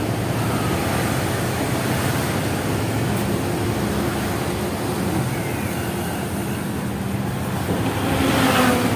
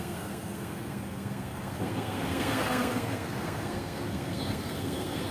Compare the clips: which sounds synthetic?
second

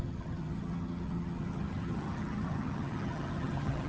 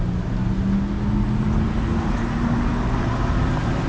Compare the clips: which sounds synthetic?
first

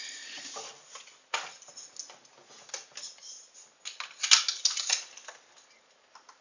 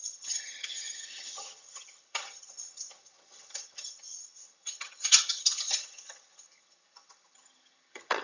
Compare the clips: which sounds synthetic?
second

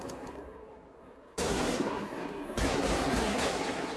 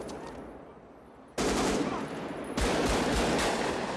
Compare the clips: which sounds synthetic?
first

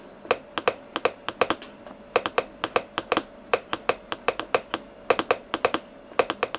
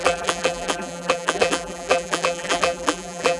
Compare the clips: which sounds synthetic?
second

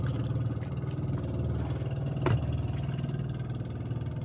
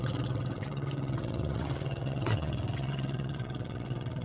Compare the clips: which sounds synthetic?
second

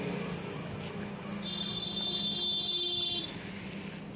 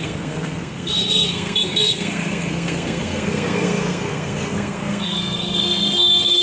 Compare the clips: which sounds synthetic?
second